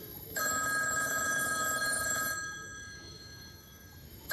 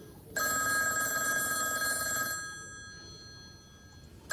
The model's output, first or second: first